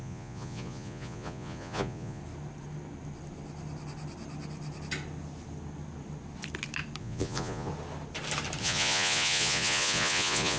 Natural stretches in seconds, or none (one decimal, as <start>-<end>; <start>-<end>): 2.2-7.0; 7.7-8.6